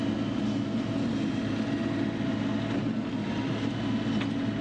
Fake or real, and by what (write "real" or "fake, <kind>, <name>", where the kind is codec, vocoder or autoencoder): real